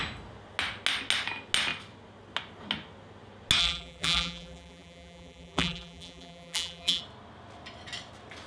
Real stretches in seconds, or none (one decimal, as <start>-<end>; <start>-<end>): 0.0-3.6; 7.0-8.5